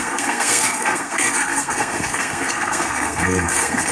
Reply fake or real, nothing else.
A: fake